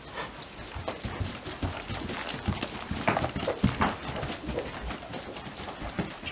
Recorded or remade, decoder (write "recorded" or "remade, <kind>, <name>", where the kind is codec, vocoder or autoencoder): recorded